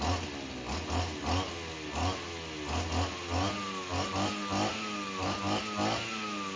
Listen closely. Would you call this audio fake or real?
real